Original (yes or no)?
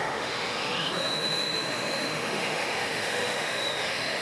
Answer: no